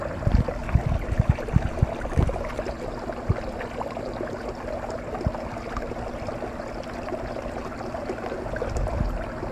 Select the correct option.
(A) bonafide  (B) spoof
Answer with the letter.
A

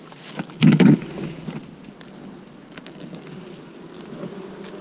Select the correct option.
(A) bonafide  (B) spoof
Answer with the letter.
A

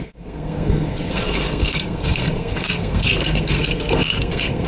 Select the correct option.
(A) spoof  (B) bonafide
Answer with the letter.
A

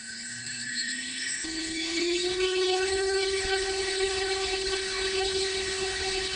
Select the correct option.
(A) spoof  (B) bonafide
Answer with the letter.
A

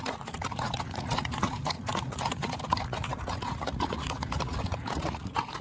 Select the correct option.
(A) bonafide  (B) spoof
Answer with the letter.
B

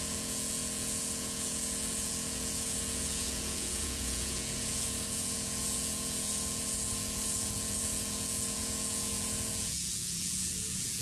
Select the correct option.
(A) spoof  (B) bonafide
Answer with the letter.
A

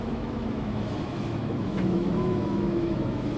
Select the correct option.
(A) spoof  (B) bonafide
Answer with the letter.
A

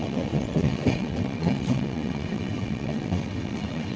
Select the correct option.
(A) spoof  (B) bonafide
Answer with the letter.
A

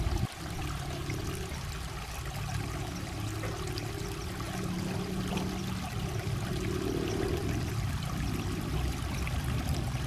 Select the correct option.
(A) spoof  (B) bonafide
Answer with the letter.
B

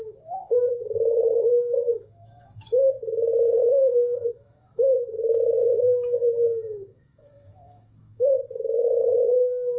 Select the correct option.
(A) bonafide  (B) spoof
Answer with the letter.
B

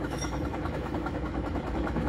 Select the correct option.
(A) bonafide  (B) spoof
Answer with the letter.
B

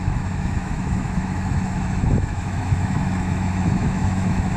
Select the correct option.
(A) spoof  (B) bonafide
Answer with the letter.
A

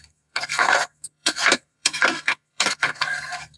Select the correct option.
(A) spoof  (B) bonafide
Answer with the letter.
A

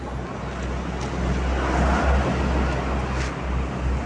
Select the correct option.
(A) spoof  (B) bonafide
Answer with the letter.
B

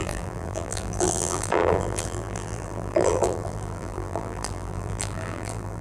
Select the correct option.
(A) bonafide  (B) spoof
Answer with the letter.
B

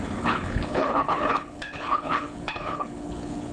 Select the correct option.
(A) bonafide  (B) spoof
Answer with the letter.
B